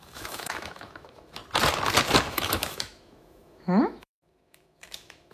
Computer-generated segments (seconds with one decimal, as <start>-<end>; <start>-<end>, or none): 0.0-1.4; 2.3-5.3